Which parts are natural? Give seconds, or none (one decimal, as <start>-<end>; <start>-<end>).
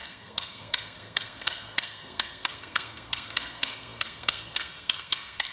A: none